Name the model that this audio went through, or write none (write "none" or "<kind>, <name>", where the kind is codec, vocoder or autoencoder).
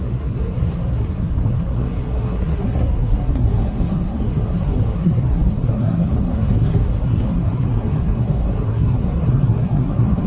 codec, SNAC